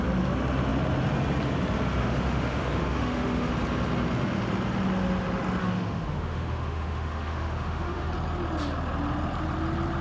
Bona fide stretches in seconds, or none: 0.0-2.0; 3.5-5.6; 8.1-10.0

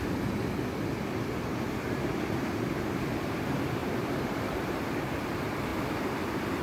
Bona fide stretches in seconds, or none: 0.0-1.5; 2.7-3.8; 5.3-6.6

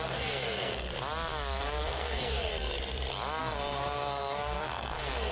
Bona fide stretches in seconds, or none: 0.9-1.6; 2.5-3.4

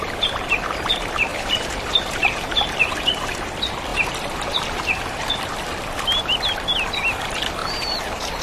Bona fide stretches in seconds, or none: 0.0-1.3; 2.8-3.9; 5.3-7.6

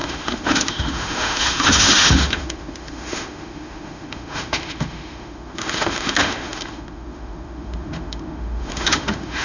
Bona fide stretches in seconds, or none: none

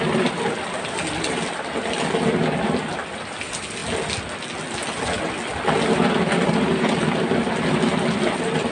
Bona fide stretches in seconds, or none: 0.0-8.7

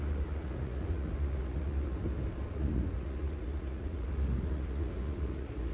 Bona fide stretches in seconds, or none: 2.0-2.5

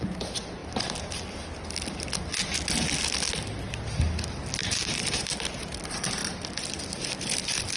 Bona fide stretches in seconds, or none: 0.0-4.6; 5.4-7.8